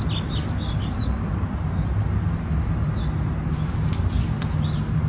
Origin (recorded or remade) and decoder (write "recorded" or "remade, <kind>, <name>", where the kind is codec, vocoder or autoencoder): recorded